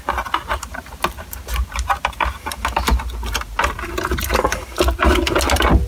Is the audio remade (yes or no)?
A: no